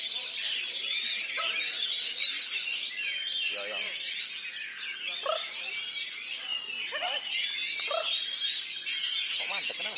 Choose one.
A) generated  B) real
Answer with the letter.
B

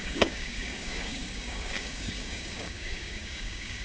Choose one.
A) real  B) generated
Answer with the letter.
B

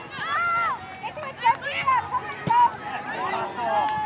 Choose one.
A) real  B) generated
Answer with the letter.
A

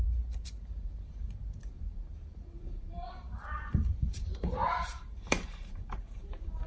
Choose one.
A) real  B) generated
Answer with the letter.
B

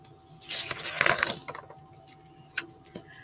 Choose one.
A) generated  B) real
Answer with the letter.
B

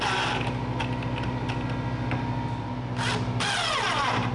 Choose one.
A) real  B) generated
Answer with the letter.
A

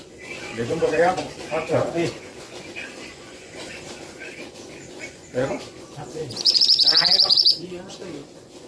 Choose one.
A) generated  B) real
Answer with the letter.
A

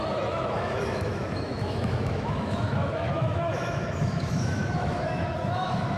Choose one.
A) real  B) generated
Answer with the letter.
B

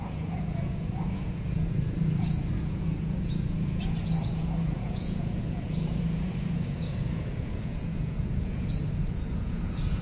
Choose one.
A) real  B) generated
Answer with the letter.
B